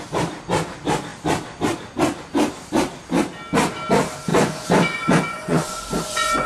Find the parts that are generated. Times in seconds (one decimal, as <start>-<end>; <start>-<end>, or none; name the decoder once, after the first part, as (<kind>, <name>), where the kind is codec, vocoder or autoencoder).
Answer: 4.3-6.5 (vocoder, Vocos)